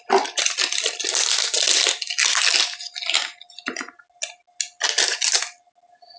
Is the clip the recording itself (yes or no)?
yes